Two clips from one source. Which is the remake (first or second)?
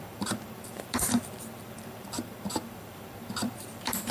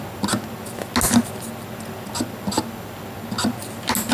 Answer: first